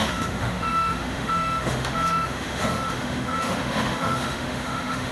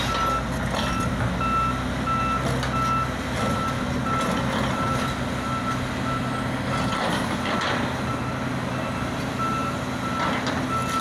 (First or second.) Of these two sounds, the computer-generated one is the first